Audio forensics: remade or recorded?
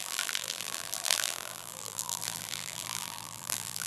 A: remade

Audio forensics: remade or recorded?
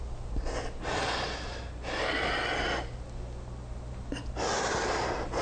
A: recorded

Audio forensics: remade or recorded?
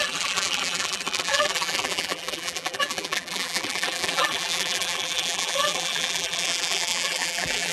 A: remade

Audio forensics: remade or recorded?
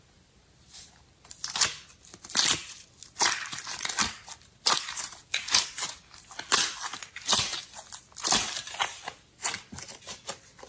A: recorded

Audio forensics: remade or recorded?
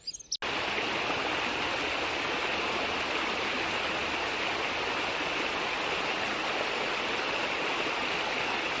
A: recorded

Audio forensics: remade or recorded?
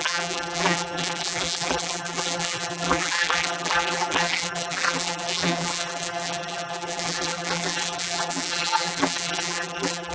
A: remade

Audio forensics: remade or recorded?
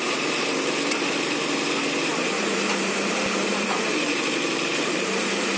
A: remade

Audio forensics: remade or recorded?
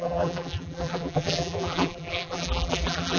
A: remade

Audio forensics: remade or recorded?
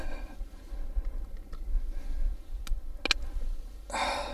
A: recorded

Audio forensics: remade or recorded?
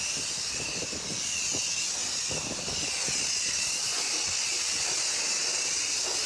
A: recorded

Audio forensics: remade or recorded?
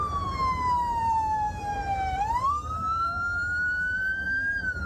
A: remade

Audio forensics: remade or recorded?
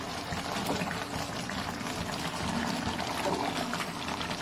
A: recorded